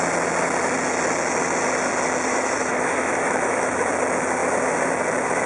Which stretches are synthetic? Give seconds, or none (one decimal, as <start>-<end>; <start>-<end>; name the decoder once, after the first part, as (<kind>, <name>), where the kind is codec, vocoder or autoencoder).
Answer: 2.3-3.9 (autoencoder, DAC-VAE)